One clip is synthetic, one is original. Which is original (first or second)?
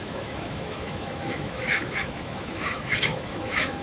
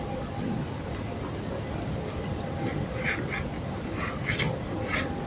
second